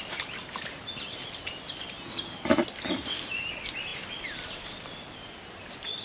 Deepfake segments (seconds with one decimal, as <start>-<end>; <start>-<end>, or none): none